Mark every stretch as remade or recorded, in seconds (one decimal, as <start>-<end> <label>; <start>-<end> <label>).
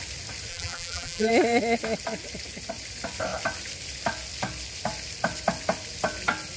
0.0-0.5 recorded; 0.5-1.3 remade; 1.3-6.6 recorded